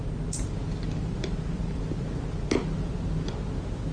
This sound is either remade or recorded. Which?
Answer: recorded